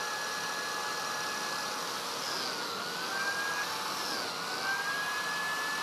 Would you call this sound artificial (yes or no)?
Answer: no